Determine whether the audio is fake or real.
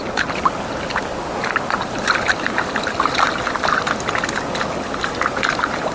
real